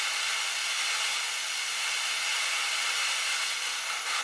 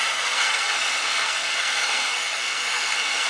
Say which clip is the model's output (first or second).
second